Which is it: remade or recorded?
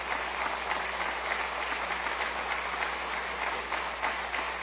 recorded